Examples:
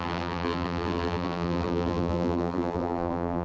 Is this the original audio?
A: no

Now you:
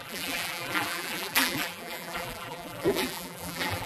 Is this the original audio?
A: no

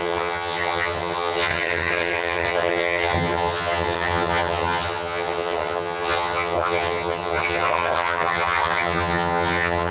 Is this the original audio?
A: no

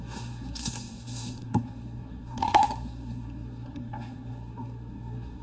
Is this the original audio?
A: no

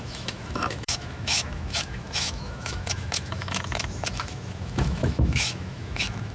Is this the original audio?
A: no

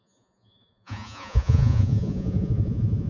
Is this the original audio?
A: no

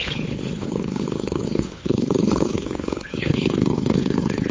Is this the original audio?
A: no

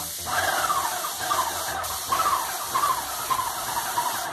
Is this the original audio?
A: no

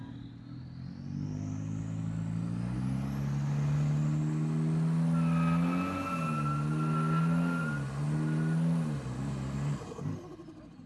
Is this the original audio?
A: yes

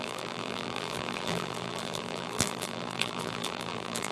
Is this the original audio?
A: no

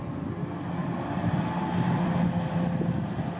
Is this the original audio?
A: no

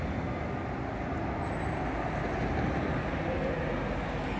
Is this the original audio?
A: yes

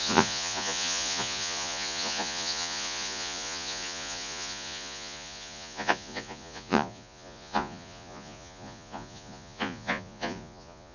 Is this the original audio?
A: no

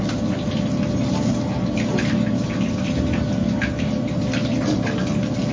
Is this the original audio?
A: yes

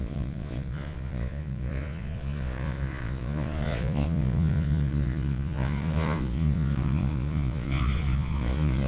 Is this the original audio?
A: no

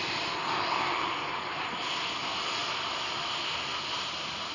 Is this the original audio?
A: yes